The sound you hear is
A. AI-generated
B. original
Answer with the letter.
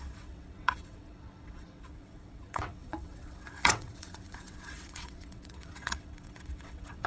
A